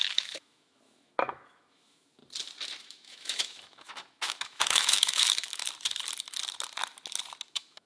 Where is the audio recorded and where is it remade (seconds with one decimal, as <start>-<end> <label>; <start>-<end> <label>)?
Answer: 0.0-2.2 remade; 2.2-2.8 recorded; 2.8-5.6 remade; 5.6-7.5 recorded; 7.5-7.9 remade